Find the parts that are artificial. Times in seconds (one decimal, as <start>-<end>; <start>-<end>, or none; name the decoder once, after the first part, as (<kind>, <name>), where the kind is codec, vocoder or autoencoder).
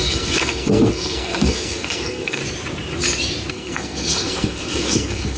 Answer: 0.0-2.4 (codec, SNAC); 3.5-5.4